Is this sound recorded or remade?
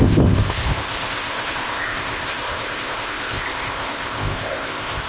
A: remade